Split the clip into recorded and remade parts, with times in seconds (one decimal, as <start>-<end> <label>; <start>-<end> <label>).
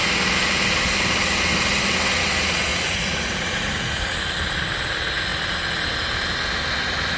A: 0.0-2.7 recorded; 2.7-4.1 remade; 4.1-7.2 recorded